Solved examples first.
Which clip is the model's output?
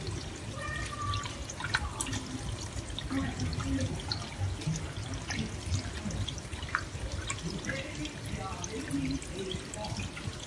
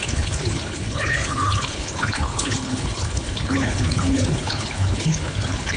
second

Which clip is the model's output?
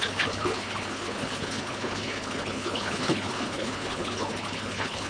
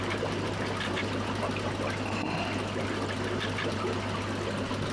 first